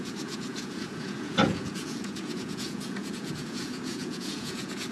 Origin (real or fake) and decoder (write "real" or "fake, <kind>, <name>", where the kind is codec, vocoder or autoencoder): fake, vocoder, Vocos